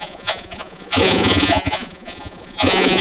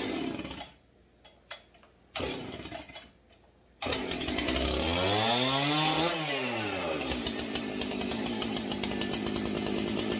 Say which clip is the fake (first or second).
first